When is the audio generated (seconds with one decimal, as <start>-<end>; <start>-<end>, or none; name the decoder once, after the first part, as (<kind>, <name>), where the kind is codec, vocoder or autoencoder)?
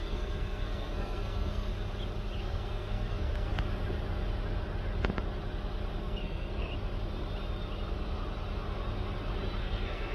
0.0-1.7 (codec, SNAC); 2.4-3.5; 6.0-6.7; 9.6-10.1